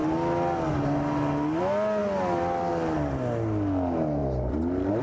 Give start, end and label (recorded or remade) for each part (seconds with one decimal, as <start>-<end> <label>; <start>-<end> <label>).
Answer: 0.0-5.0 recorded